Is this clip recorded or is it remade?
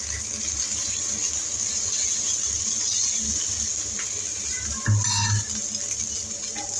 recorded